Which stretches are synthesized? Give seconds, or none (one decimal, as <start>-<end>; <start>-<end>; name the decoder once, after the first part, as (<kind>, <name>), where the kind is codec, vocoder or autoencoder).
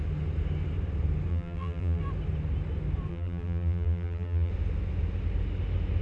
1.3-2.0 (vocoder, BigVGAN v2); 3.1-4.5